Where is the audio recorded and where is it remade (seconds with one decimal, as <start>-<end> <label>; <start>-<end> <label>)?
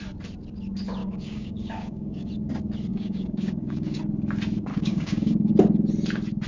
0.0-1.0 recorded; 1.0-2.3 remade; 2.3-2.9 recorded; 2.9-4.0 remade; 4.0-4.7 recorded; 4.7-5.5 remade; 5.5-6.5 recorded